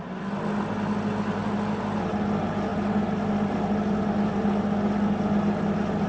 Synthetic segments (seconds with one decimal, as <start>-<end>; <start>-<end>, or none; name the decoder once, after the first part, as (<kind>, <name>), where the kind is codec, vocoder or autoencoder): none